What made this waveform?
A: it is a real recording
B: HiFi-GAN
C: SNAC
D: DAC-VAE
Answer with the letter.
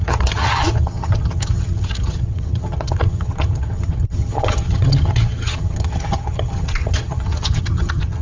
B